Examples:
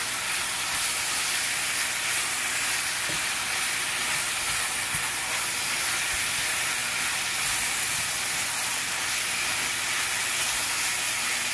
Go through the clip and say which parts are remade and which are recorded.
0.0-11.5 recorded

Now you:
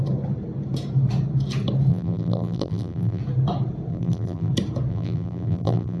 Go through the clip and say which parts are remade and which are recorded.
0.0-1.9 recorded; 1.9-3.2 remade; 3.2-3.9 recorded; 3.9-4.5 remade; 4.5-4.9 recorded; 4.9-6.0 remade

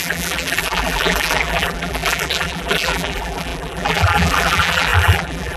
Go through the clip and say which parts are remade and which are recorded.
0.0-5.6 remade

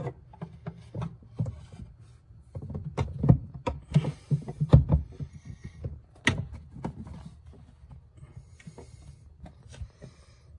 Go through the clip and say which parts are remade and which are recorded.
0.0-5.3 recorded; 5.3-5.8 remade; 5.8-10.6 recorded

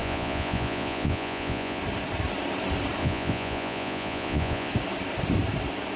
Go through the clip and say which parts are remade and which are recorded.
0.0-1.8 remade; 1.8-3.0 recorded; 3.0-4.7 remade; 4.7-6.0 recorded

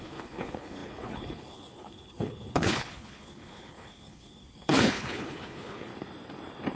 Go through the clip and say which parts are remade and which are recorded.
0.0-5.9 remade; 5.9-6.8 recorded

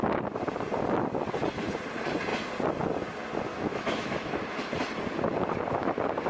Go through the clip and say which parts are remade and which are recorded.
0.0-3.5 recorded; 3.5-4.6 remade; 4.6-6.3 recorded